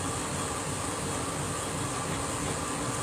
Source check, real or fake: real